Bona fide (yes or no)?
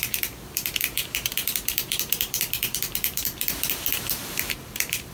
no